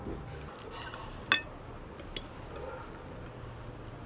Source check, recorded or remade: recorded